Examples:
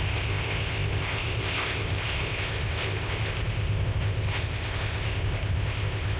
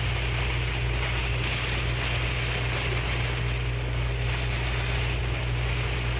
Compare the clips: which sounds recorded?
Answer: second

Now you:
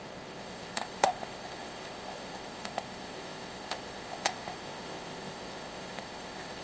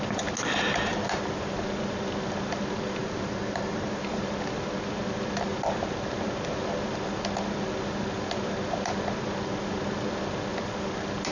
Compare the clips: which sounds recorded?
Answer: second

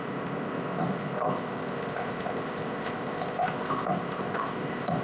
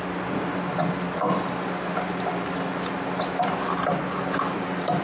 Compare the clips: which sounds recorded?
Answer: second